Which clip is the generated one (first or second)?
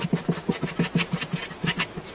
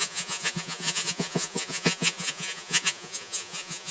second